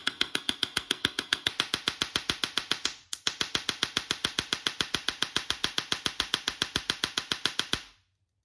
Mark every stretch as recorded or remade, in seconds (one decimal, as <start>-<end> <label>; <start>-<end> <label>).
0.0-1.5 remade; 1.5-8.4 recorded